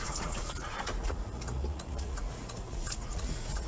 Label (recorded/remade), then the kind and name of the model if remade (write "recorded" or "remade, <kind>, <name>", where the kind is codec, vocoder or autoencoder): remade, vocoder, Vocos